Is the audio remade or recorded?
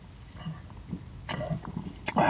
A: recorded